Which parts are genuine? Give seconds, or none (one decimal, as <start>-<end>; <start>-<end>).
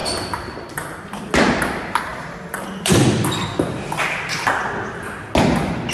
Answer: 1.0-2.1; 4.6-5.9